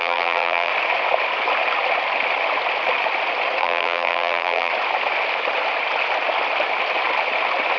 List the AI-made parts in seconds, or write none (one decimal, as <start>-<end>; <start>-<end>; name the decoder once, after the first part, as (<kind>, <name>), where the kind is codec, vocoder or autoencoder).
0.0-0.7 (vocoder, BigVGAN v2); 3.6-4.7